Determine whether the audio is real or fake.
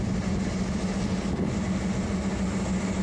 real